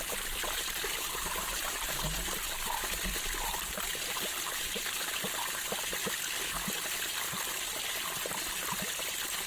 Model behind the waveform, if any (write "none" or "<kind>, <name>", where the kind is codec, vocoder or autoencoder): none